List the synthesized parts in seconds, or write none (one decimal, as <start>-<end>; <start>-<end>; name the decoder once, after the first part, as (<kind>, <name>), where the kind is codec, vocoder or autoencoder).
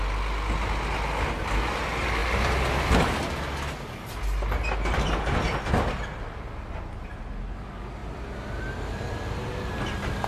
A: none